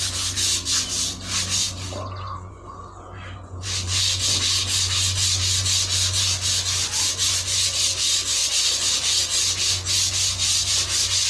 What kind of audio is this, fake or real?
fake